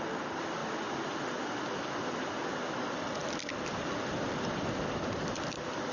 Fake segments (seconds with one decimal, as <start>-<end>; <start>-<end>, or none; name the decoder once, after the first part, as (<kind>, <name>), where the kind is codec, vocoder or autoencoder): none

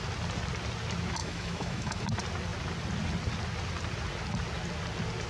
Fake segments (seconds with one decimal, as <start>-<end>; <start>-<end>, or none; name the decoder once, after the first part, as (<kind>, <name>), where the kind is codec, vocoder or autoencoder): 1.2-2.0 (autoencoder, DAC-VAE)

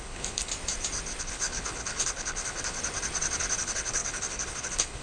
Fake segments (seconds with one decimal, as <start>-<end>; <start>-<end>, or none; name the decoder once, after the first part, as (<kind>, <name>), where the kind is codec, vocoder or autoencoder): 0.0-0.5 (codec, HILCodec); 1.2-2.8; 3.6-5.0

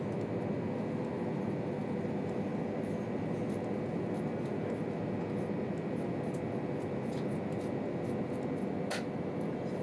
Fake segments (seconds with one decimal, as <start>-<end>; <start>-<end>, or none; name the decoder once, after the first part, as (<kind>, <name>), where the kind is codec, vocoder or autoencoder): none

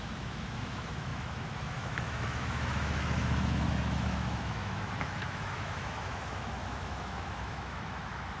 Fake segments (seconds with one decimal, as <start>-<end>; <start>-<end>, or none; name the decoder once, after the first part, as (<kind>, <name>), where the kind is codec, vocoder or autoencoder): 0.0-8.4 (autoencoder, DAC-VAE)

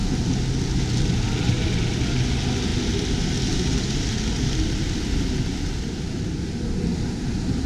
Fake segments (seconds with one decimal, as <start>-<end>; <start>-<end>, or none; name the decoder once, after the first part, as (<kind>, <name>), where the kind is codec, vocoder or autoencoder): none

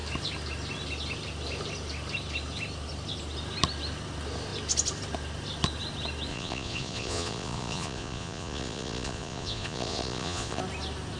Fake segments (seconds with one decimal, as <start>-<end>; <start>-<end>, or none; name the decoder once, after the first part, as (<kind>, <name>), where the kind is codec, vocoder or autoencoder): 6.3-10.6 (vocoder, Vocos)